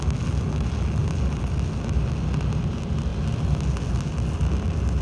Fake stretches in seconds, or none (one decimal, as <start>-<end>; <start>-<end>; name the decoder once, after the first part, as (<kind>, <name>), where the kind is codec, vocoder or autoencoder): none